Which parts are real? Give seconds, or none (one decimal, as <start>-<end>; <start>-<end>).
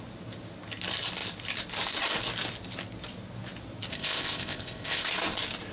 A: 0.0-3.9; 5.1-5.7